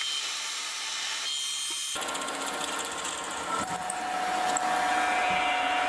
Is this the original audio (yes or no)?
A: yes